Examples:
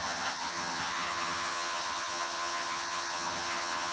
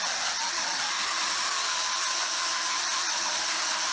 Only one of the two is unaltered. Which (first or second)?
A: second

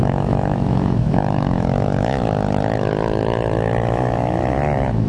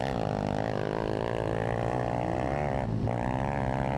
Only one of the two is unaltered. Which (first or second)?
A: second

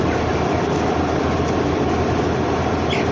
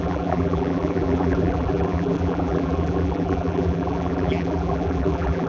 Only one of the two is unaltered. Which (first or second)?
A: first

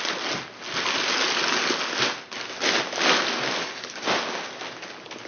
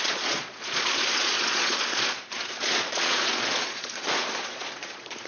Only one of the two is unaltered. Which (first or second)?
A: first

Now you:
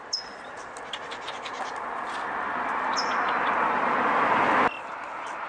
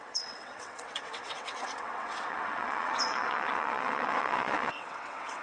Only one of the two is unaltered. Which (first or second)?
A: first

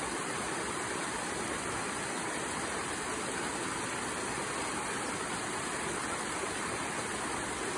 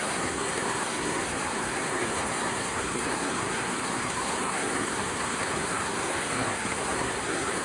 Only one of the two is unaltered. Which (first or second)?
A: first